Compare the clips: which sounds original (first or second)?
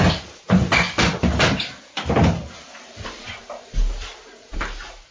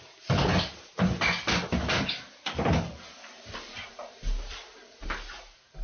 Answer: second